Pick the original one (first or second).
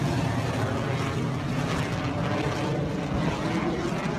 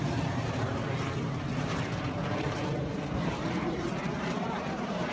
first